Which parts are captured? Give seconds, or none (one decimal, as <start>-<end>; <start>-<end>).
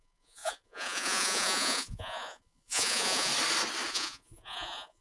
3.3-3.9